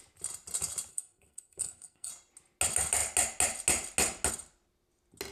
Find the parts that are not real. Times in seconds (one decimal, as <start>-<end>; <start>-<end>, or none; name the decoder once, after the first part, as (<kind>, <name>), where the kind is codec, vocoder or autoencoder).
0.9-2.1 (codec, SNAC)